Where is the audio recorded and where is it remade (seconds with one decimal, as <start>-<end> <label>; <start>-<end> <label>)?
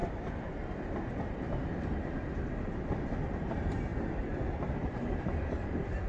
0.0-6.1 remade